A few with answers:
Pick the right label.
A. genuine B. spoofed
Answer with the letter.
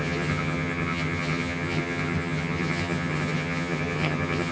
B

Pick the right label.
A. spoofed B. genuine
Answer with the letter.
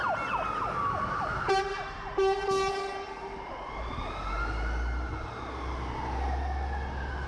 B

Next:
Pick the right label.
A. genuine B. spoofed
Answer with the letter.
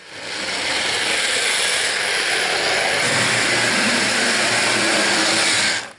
A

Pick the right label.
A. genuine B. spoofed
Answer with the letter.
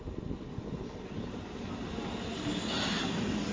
A